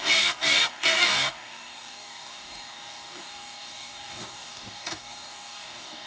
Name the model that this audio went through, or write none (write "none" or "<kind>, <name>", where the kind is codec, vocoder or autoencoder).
codec, DAC